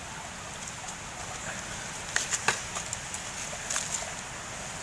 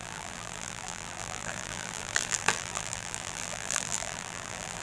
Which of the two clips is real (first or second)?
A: first